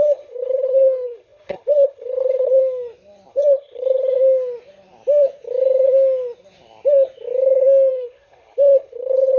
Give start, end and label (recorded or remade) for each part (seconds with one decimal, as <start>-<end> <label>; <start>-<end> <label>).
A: 0.0-2.6 remade; 2.6-3.3 recorded; 3.3-4.1 remade; 4.1-7.9 recorded; 7.9-9.4 remade